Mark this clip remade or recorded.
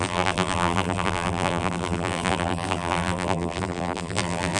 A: remade